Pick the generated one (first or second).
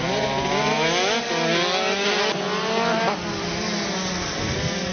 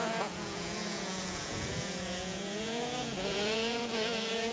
second